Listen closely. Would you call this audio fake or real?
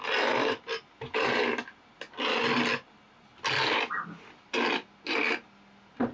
real